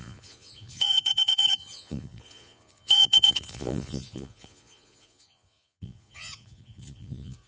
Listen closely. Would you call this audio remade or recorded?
remade